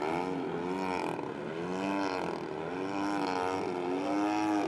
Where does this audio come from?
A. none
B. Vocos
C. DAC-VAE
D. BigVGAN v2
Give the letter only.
A